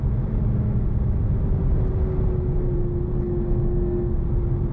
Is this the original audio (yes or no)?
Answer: yes